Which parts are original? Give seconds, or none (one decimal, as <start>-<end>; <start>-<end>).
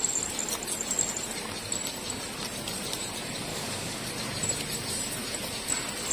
0.0-3.5; 4.1-6.1